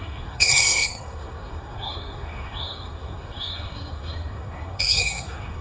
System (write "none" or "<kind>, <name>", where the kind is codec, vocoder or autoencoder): codec, SNAC